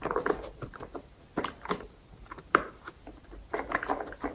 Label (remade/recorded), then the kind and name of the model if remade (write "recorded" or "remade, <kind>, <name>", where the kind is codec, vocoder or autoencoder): recorded